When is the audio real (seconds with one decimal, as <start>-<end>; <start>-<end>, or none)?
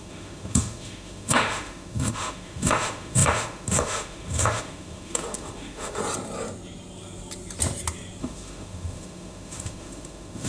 6.0-8.2